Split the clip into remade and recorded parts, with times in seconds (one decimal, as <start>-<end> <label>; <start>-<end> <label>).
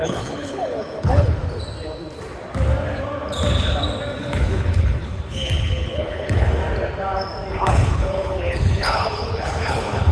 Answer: 0.0-1.4 remade; 1.4-4.2 recorded; 4.2-6.6 remade; 6.6-7.5 recorded; 7.5-10.1 remade